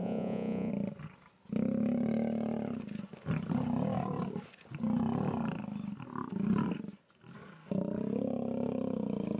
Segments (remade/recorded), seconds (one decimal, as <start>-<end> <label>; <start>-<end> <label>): 0.0-0.7 remade; 0.7-9.4 recorded